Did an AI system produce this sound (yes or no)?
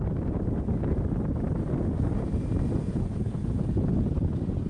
no